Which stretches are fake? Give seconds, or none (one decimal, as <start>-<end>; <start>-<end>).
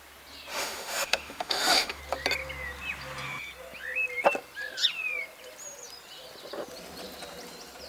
0.5-2.0